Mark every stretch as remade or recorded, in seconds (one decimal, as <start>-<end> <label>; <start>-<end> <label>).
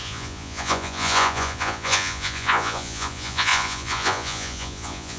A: 0.0-5.2 remade